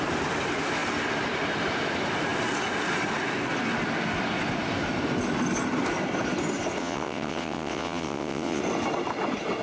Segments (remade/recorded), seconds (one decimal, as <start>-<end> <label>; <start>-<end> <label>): 0.0-6.8 recorded; 6.8-8.6 remade; 8.6-9.6 recorded

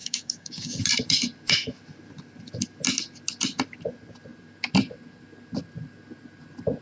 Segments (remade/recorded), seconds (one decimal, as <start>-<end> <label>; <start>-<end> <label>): 0.0-0.8 remade; 0.8-6.8 recorded